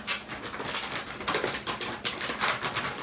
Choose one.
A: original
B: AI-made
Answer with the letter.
A